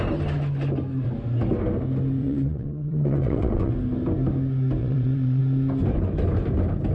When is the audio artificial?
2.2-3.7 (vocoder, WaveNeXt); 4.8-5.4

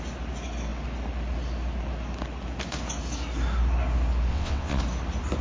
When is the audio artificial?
4.3-4.8 (vocoder, WaveNeXt)

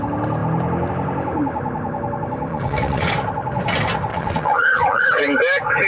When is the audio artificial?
2.5-3.1 (vocoder, WaveNeXt); 4.1-5.2

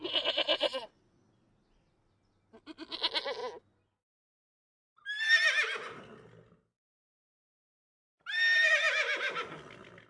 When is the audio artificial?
0.5-1.0 (vocoder, WaveNeXt)

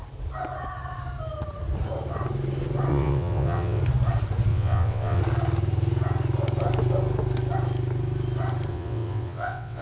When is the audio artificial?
2.9-3.8 (vocoder, WaveNeXt); 4.5-5.2; 8.7-9.8